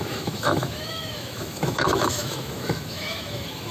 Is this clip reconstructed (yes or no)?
yes